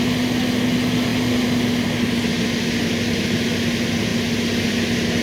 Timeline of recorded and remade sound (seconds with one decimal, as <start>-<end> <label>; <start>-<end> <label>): 0.0-5.2 recorded

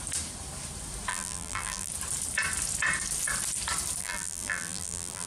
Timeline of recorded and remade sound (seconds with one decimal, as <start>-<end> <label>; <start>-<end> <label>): 0.0-1.1 recorded; 1.1-1.9 remade; 1.9-4.0 recorded; 4.0-5.3 remade